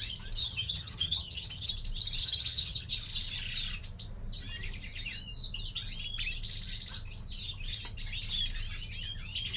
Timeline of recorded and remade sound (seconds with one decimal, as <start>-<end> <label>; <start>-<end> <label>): 0.0-0.4 recorded; 0.4-1.7 remade; 1.7-2.2 recorded; 2.2-2.9 remade; 2.9-9.6 recorded